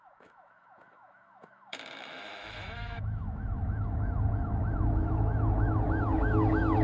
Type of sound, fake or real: fake